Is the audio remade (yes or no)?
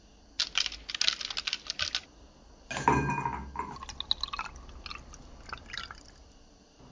no